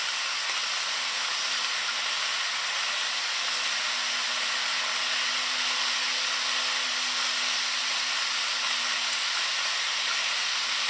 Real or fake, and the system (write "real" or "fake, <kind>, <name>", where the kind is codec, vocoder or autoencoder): real